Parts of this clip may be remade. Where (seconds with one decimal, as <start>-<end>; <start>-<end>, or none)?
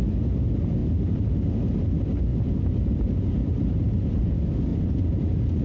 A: 0.8-1.5; 2.3-4.3; 4.7-5.6